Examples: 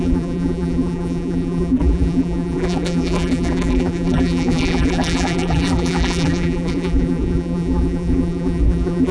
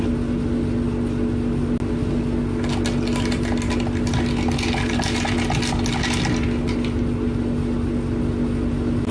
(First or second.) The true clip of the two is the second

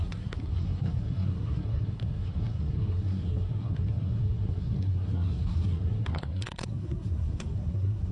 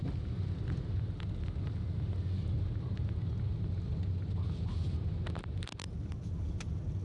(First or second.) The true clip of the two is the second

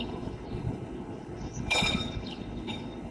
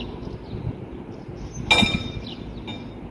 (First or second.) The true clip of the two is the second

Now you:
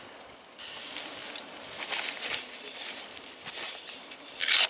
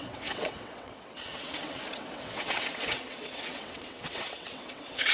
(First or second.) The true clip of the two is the first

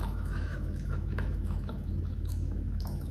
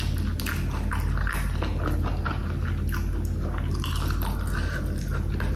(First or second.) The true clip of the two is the second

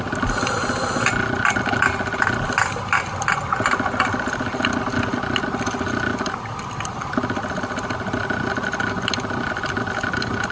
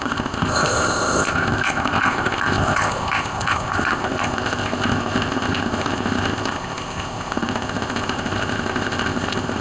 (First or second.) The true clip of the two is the first